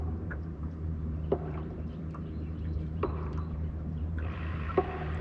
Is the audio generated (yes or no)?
yes